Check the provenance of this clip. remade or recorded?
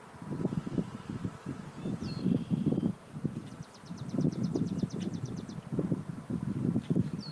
remade